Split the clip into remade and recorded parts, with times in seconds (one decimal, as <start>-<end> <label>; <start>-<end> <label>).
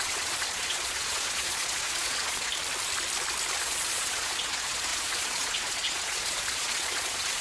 0.0-2.5 remade; 2.5-3.6 recorded; 3.6-7.4 remade